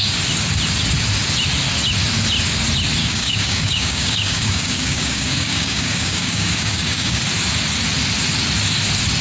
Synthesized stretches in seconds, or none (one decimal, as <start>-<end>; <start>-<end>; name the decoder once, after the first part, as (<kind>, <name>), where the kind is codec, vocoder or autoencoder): 3.0-7.2 (codec, DAC)

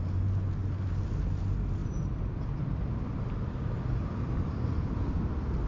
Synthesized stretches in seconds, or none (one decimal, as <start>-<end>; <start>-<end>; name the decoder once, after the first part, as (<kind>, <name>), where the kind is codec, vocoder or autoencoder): 0.6-1.2 (vocoder, BigVGAN v2); 1.8-5.2

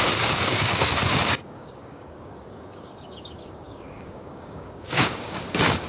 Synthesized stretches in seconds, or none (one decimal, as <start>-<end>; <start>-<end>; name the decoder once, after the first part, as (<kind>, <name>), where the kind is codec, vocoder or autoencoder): 0.0-5.9 (codec, DAC)

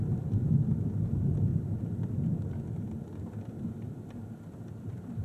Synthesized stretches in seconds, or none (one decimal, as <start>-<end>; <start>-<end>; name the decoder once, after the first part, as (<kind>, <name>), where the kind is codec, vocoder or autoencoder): 0.0-1.5 (vocoder, BigVGAN v2); 3.6-5.2

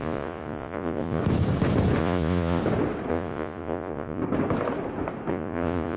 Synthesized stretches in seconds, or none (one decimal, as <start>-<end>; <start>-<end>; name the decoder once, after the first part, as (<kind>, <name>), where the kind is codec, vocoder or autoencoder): 0.0-1.2 (vocoder, Vocos); 2.0-2.6; 3.1-4.2; 5.3-6.0